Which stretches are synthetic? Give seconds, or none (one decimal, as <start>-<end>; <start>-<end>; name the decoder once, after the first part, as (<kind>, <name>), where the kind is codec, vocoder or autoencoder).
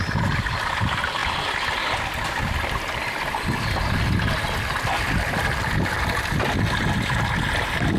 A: none